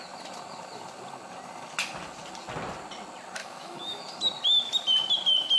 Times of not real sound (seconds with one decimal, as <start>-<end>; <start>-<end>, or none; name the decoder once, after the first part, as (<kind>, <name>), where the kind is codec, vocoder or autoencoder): 3.4-4.1 (autoencoder, DAC-VAE)